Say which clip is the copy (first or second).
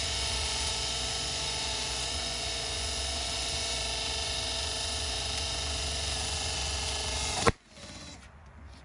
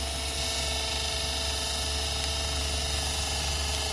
first